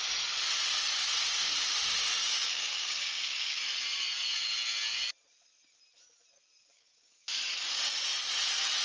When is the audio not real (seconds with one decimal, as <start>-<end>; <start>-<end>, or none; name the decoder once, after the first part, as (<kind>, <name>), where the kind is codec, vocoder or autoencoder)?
2.2-3.6 (codec, DAC); 6.6-7.4